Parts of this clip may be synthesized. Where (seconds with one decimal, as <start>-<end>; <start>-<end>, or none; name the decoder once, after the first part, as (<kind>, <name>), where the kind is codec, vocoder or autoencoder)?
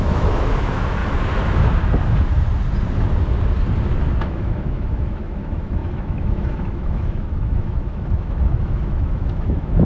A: 0.0-1.0 (autoencoder, DAC-VAE); 4.2-9.8